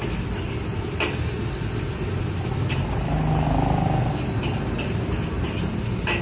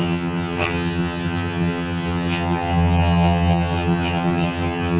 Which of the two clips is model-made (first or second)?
second